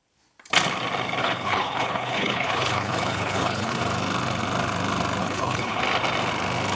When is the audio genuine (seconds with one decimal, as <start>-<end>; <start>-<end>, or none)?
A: 0.0-1.2; 3.8-5.2; 5.8-6.8